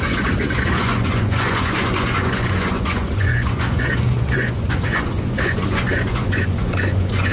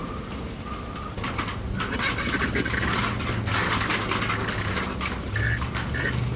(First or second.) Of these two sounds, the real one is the second